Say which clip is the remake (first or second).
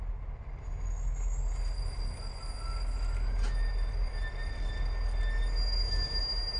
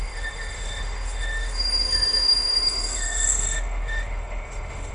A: second